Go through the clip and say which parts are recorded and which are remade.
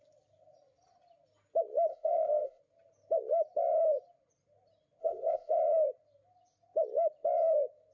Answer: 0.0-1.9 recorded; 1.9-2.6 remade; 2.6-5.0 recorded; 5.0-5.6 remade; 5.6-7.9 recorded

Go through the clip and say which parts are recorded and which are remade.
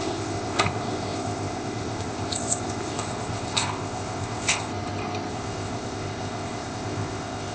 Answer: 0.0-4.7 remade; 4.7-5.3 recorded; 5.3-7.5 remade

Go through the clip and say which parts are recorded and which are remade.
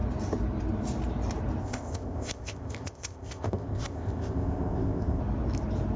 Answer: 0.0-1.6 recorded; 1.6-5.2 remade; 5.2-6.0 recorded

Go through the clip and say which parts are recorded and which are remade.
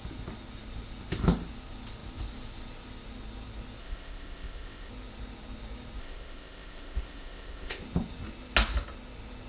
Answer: 0.0-3.8 recorded; 3.8-4.9 remade; 4.9-6.0 recorded; 6.0-7.8 remade; 7.8-9.5 recorded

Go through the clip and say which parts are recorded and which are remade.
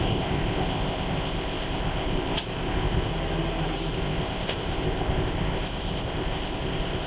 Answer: 0.0-3.1 remade; 3.1-3.9 recorded; 3.9-7.1 remade